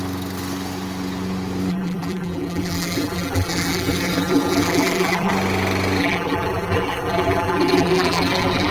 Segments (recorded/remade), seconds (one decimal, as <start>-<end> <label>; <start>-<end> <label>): 0.0-1.7 recorded; 1.7-5.3 remade; 5.3-6.0 recorded; 6.0-8.7 remade